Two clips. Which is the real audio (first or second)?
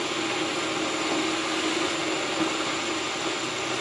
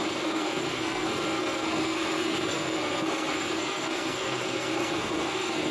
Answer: first